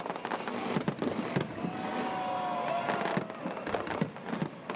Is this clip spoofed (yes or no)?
no